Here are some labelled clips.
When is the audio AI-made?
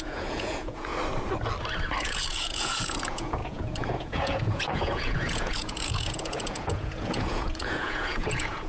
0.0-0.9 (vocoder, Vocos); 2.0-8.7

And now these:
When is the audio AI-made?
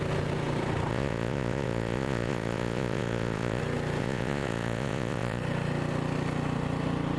0.9-3.6 (vocoder, Vocos); 4.0-5.4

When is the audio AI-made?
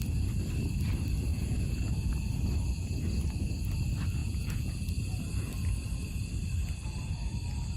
1.3-2.1 (vocoder, Vocos); 4.2-4.9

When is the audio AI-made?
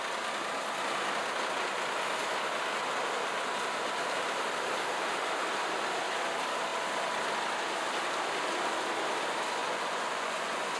9.6-10.8 (vocoder, Vocos)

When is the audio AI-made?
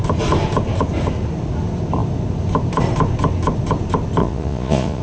4.2-5.0 (vocoder, Vocos)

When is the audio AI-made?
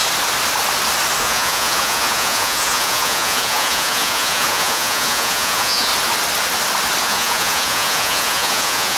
1.2-5.9 (vocoder, Vocos); 7.0-9.0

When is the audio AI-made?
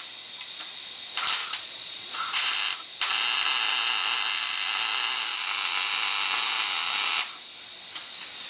1.4-2.5 (vocoder, Vocos)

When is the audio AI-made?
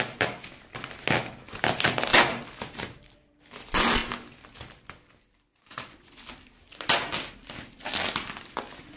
5.5-6.1 (vocoder, Vocos)